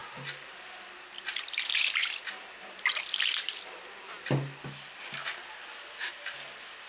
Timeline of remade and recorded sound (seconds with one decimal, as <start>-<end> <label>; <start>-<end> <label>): 0.0-6.9 recorded